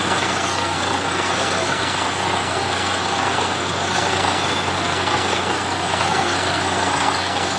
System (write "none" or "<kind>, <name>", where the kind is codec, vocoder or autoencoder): codec, SNAC